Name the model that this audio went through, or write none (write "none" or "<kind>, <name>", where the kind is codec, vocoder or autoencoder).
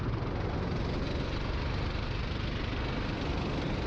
none